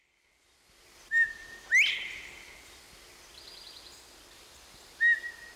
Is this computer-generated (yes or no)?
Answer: no